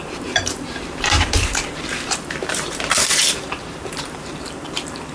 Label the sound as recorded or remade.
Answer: remade